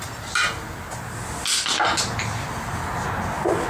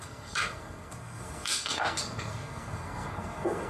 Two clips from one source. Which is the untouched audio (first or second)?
first